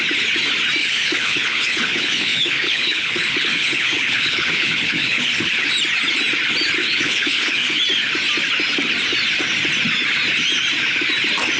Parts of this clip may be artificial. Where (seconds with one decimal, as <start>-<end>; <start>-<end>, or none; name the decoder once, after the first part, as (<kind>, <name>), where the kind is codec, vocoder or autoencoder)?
0.8-5.7 (codec, HILCodec); 6.8-7.8